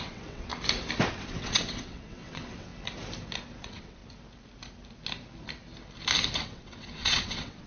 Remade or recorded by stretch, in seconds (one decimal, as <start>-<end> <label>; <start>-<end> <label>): 0.0-0.5 remade; 0.5-1.1 recorded; 1.1-2.7 remade; 2.7-3.6 recorded; 3.6-4.0 remade; 4.0-6.4 recorded; 6.4-7.7 remade